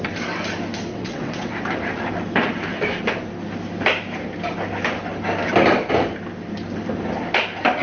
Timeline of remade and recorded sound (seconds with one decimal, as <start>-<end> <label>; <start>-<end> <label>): 0.0-0.9 recorded; 0.9-1.5 remade; 1.5-7.8 recorded